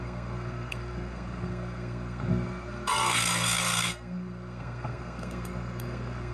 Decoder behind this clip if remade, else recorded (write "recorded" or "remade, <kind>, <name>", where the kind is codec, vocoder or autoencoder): remade, codec, SNAC